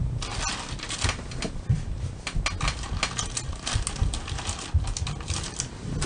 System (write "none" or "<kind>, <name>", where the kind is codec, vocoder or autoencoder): none